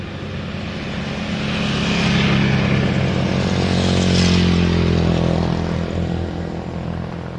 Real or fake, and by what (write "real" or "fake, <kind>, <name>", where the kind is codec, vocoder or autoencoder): real